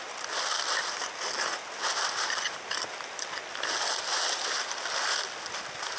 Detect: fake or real real